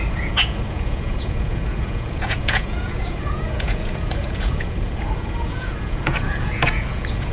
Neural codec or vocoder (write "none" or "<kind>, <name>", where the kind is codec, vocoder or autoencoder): vocoder, Vocos